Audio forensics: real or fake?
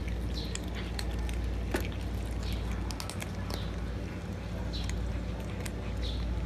real